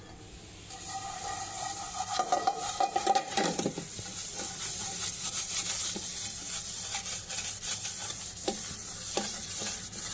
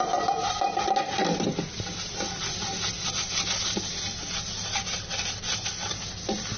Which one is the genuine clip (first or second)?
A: second